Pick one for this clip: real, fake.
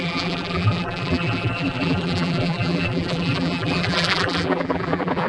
fake